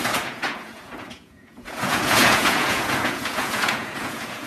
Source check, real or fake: fake